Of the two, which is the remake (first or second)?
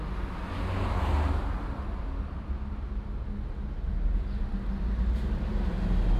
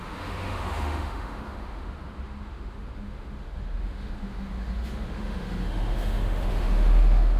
second